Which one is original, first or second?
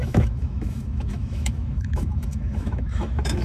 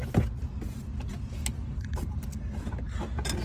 second